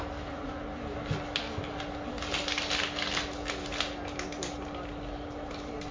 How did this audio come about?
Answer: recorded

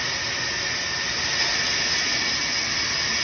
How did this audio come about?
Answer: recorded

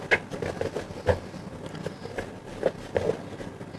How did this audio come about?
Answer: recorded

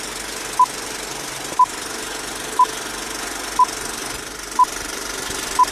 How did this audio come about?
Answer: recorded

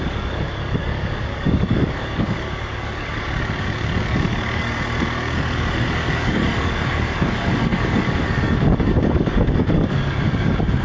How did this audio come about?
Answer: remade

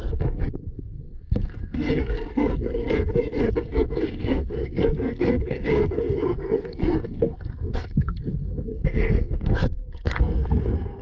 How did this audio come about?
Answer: remade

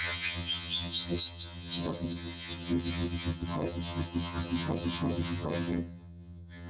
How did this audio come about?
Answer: remade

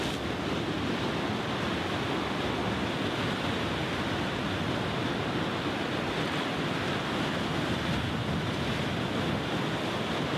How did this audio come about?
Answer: recorded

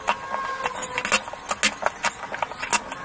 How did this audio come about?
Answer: recorded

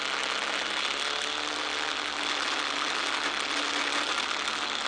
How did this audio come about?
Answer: recorded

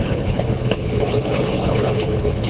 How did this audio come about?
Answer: remade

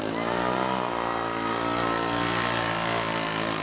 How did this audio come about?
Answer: recorded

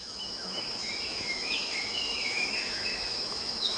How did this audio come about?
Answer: remade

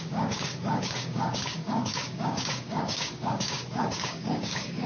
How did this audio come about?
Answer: remade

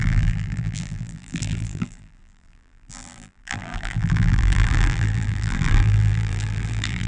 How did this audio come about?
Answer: remade